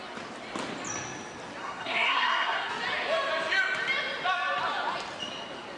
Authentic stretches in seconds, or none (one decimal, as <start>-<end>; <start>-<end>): 0.0-1.6; 2.7-5.8